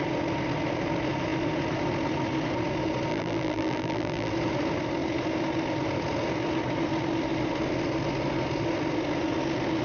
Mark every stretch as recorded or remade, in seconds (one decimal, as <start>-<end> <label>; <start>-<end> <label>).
0.0-3.1 recorded; 3.1-4.3 remade; 4.3-9.8 recorded